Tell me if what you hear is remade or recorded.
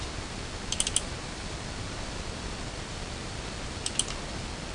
recorded